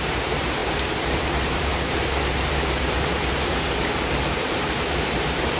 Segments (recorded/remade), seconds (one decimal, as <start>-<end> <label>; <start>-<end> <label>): 0.0-5.6 remade